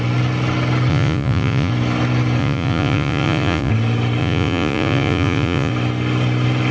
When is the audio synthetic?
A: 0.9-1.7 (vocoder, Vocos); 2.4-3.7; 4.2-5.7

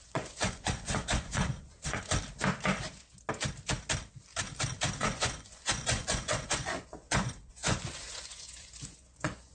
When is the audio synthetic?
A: 0.0-2.0 (vocoder, Vocos); 5.0-9.5